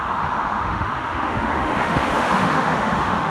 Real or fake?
fake